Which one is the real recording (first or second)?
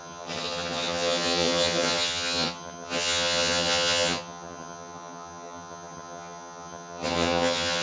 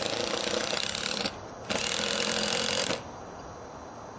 second